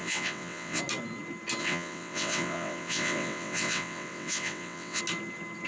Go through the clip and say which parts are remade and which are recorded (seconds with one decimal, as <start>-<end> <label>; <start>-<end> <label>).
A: 0.0-0.8 remade; 0.8-1.6 recorded; 1.6-5.0 remade; 5.0-5.7 recorded